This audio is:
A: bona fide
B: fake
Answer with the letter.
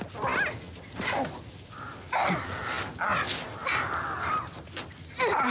A